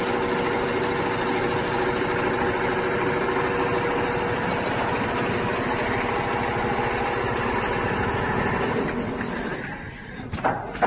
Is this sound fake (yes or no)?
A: no